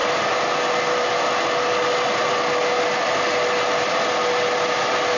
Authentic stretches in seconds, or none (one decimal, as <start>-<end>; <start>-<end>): 0.0-5.2